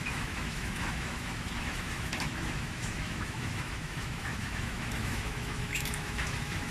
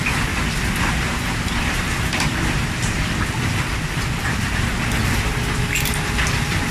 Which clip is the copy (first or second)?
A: first